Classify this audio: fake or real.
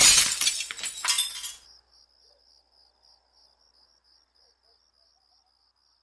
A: real